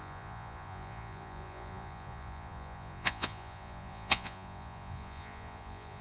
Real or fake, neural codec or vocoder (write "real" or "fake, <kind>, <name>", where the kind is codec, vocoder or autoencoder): fake, vocoder, Vocos